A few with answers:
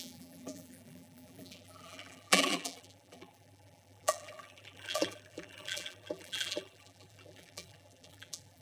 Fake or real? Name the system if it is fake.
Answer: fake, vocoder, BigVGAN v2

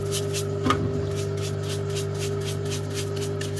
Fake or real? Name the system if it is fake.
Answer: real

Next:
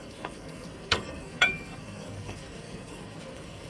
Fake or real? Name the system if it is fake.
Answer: fake, codec, SNAC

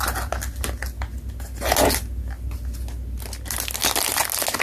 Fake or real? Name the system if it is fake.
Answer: real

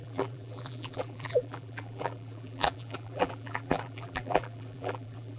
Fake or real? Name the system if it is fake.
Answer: fake, vocoder, BigVGAN v2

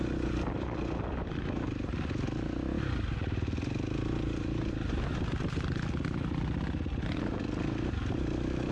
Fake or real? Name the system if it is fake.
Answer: real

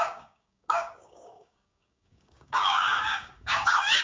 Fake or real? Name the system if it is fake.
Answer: fake, codec, DAC